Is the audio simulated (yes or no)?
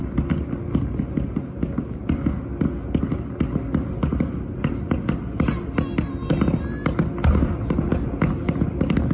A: no